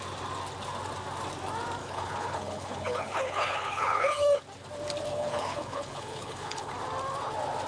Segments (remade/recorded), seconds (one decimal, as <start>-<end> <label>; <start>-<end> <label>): 0.0-1.8 recorded; 1.8-4.4 remade; 4.4-5.1 recorded; 5.1-6.7 remade; 6.7-7.7 recorded